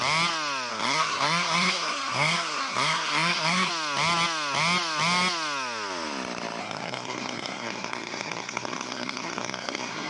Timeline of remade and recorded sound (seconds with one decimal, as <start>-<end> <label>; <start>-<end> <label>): 0.0-0.7 recorded; 0.7-3.7 remade; 3.7-6.6 recorded; 6.6-10.1 remade